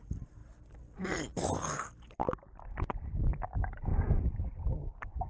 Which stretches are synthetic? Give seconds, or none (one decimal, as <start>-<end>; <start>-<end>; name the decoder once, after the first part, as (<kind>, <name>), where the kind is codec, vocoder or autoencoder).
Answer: none